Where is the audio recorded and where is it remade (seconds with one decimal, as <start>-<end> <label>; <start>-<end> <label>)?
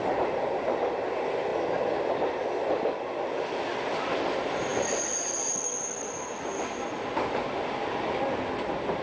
0.0-9.0 recorded